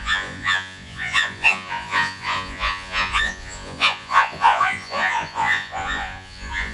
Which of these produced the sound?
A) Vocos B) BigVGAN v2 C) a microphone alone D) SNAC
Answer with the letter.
A